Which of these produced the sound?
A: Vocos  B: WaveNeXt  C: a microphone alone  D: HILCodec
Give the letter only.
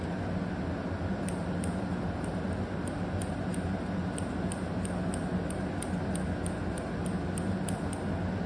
C